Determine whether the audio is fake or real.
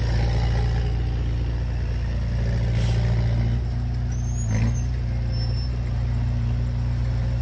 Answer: real